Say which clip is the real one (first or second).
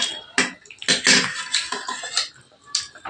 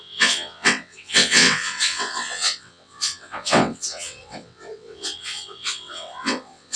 first